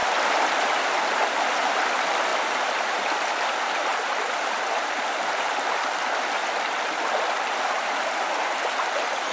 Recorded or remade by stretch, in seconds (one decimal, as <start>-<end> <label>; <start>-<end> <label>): 0.0-2.3 recorded; 2.3-3.5 remade; 3.5-9.3 recorded